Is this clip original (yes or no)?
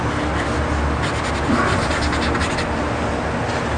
yes